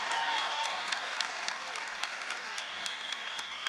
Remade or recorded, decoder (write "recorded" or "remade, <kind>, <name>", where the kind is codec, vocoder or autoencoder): remade, codec, DAC